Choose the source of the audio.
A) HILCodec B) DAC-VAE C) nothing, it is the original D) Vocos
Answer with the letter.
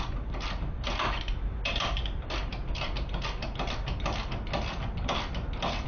C